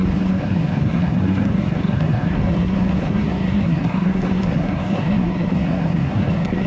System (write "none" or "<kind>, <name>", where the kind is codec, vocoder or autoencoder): codec, SNAC